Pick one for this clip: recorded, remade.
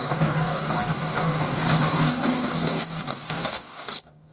remade